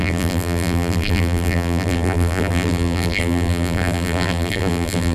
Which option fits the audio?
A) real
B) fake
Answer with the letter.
B